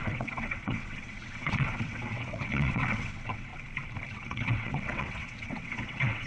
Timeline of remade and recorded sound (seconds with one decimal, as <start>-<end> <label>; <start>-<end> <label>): 0.0-3.5 remade; 3.5-4.1 recorded; 4.1-6.3 remade